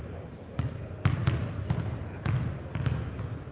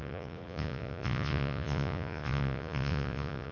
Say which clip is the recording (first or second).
first